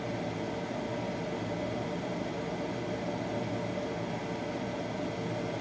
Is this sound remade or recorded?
recorded